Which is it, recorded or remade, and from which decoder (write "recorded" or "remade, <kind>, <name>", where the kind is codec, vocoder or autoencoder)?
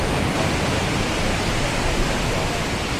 recorded